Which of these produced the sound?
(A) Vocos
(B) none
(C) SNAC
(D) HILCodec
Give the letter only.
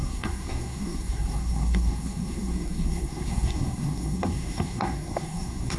C